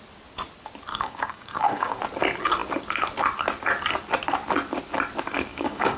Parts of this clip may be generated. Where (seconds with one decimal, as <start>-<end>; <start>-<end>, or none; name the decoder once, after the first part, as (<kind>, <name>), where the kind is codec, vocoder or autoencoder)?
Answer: 0.9-2.0 (codec, DAC); 5.5-6.0